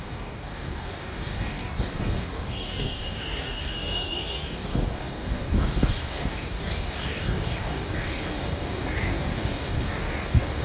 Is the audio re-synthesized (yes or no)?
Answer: yes